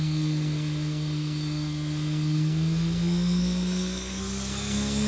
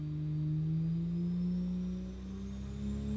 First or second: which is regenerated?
first